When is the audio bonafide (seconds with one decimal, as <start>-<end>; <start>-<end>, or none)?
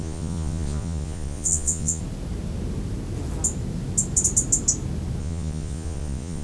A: 2.0-5.2